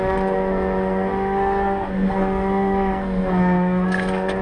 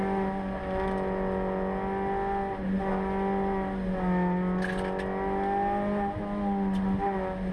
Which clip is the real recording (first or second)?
second